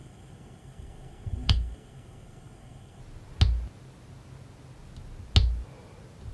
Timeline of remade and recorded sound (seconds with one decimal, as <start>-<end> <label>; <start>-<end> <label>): 0.0-3.0 remade; 3.0-6.3 recorded